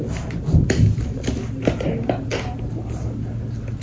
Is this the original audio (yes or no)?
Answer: yes